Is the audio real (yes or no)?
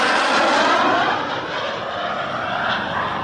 yes